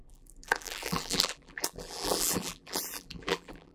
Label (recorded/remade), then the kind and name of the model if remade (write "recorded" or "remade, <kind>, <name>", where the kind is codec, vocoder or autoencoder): remade, vocoder, BigVGAN v2